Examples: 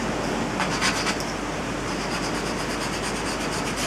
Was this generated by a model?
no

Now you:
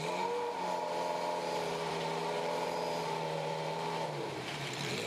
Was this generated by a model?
yes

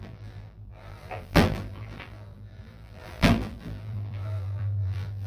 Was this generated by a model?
yes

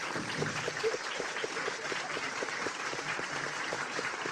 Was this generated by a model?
yes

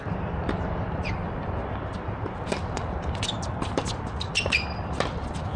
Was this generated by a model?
yes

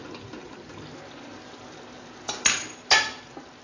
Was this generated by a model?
no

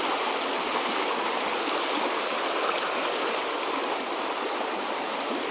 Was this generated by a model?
no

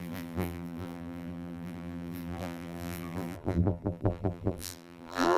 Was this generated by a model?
yes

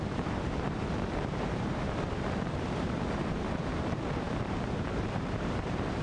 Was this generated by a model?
yes